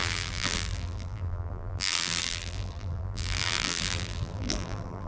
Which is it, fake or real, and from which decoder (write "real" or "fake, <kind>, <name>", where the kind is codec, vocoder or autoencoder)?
fake, vocoder, BigVGAN v2